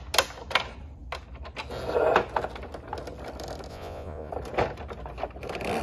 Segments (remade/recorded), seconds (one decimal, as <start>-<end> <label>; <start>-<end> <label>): 0.0-3.7 recorded; 3.7-4.3 remade; 4.3-5.8 recorded